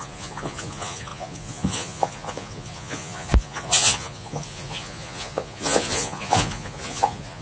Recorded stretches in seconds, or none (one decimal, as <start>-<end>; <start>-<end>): none